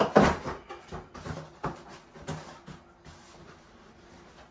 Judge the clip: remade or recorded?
recorded